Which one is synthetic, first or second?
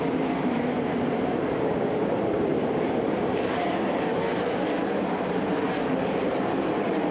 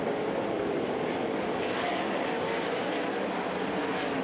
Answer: first